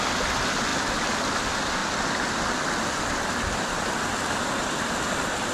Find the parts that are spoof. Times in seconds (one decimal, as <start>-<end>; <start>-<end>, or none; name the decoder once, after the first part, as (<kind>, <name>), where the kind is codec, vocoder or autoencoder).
none